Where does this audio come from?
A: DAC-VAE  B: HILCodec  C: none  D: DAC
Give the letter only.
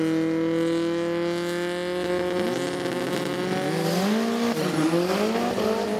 C